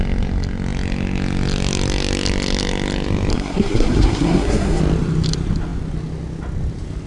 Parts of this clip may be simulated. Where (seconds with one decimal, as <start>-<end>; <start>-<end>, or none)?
3.3-4.8